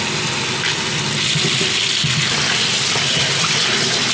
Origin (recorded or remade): recorded